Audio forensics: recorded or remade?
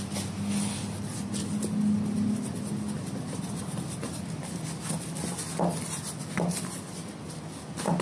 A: recorded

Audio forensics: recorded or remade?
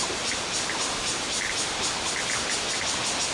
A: recorded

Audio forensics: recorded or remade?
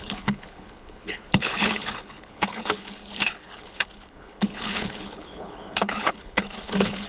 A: remade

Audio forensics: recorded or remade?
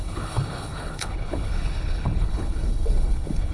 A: remade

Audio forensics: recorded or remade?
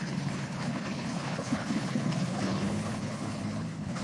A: remade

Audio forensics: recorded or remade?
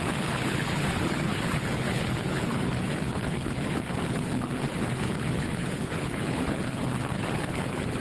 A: remade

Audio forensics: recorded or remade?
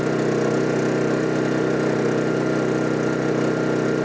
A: recorded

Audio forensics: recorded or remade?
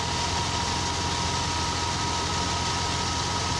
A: recorded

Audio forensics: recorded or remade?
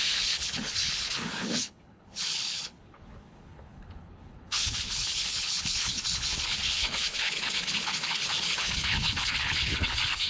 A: remade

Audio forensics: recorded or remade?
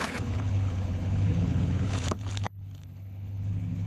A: remade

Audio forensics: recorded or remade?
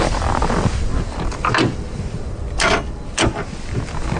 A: recorded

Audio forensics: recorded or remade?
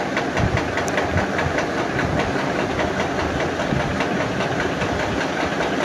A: recorded